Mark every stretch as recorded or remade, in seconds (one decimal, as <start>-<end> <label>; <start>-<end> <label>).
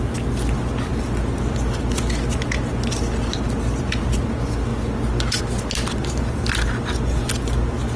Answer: 0.0-6.0 recorded; 6.0-7.2 remade; 7.2-8.0 recorded